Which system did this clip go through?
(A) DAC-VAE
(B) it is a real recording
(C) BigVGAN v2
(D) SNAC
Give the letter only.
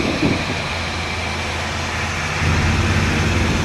B